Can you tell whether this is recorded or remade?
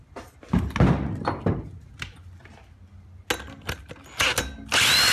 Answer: recorded